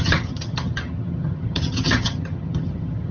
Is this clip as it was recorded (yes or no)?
no